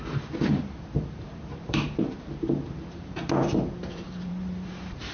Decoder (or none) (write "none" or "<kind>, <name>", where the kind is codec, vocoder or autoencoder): vocoder, BigVGAN v2